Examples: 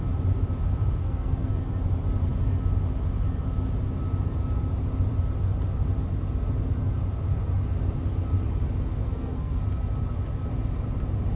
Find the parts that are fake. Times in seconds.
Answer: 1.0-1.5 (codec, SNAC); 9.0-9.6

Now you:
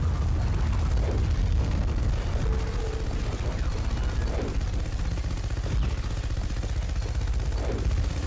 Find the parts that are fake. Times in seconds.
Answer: 1.4-2.1 (codec, SNAC)

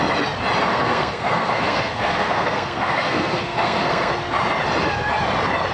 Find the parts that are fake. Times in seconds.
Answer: 0.7-4.1 (codec, SNAC)

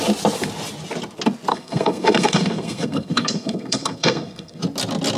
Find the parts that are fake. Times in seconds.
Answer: 1.5-4.6 (codec, SNAC)

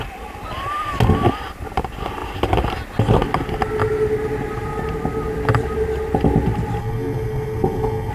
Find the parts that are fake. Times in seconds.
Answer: 6.8-8.1 (codec, SNAC)